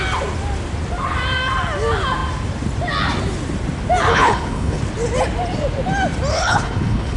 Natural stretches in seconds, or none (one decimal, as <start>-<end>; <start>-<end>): 0.0-4.1; 4.8-6.3